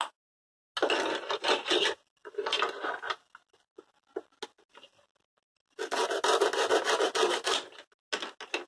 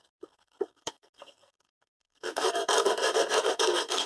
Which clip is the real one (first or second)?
first